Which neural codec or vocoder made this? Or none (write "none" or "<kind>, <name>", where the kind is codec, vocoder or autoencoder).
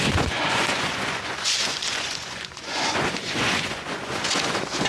vocoder, Vocos